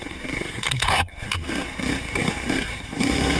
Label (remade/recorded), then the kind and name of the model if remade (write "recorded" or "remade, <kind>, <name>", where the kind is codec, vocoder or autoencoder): remade, codec, SNAC